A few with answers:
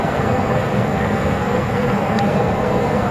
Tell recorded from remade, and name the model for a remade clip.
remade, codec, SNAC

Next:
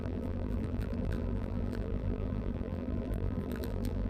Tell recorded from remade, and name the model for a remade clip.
remade, vocoder, BigVGAN v2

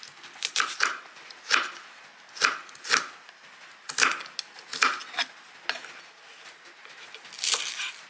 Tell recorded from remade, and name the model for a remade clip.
recorded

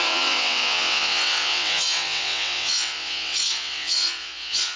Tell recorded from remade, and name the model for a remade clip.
remade, vocoder, WaveNeXt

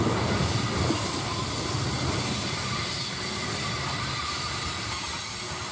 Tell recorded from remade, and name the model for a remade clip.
recorded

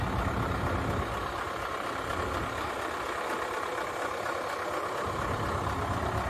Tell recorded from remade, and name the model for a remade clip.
recorded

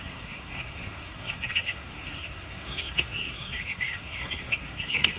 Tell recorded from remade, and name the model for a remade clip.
remade, codec, SNAC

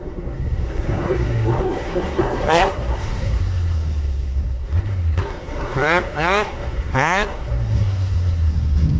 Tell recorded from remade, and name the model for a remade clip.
remade, codec, SNAC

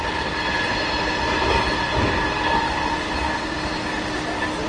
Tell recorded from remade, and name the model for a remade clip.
recorded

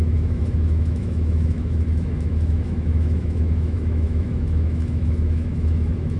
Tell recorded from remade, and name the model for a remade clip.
remade, autoencoder, DAC-VAE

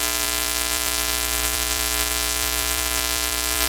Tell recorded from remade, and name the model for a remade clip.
remade, vocoder, BigVGAN v2